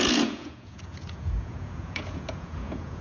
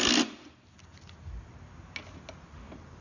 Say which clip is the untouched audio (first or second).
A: second